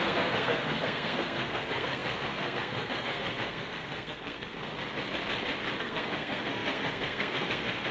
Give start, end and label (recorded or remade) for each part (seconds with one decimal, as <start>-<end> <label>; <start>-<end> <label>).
0.0-4.7 remade; 4.7-5.8 recorded; 5.8-7.9 remade